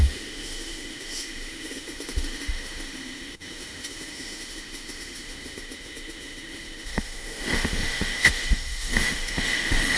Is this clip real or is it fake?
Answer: fake